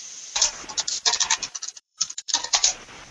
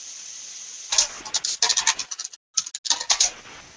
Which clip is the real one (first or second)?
second